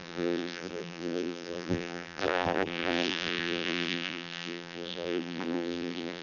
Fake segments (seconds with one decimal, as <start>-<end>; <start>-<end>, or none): 0.0-6.2